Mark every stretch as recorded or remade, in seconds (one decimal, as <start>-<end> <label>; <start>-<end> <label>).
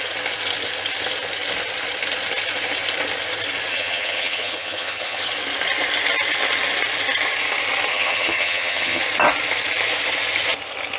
0.0-3.7 recorded; 3.7-5.3 remade; 5.3-7.9 recorded; 7.9-9.0 remade; 9.0-11.0 recorded